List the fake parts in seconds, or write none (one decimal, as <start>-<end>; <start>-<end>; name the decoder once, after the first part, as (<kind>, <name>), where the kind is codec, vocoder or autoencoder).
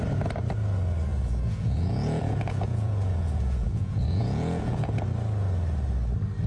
1.1-5.0 (vocoder, Vocos)